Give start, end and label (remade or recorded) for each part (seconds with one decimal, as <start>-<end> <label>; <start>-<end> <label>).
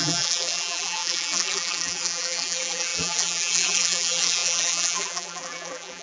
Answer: 0.0-6.0 remade